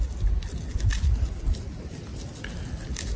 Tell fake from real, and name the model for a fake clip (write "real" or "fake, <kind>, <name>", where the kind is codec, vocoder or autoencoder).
real